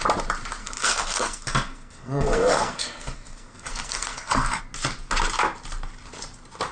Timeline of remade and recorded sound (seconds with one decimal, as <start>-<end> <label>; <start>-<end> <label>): 0.0-0.6 recorded; 0.6-4.6 remade; 4.6-6.7 recorded